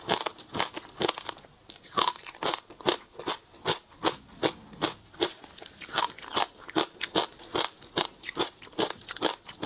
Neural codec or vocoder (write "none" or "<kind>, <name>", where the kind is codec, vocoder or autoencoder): none